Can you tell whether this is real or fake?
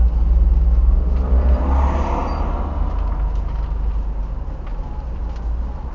real